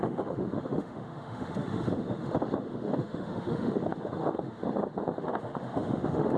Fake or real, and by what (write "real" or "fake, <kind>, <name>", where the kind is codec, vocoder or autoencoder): fake, autoencoder, DAC-VAE